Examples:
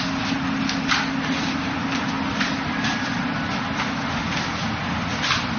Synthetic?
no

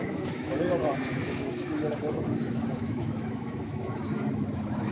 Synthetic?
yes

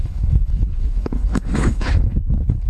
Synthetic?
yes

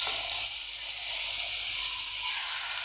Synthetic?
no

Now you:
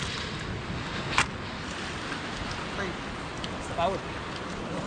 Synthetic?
no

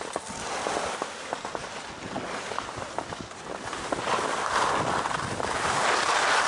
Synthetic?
no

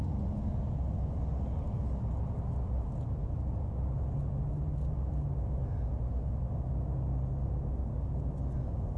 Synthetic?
no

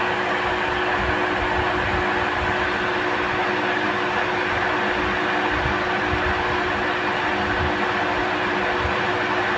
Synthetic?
no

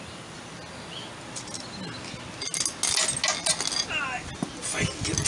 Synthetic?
no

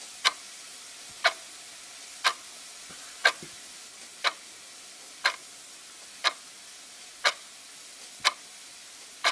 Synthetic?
no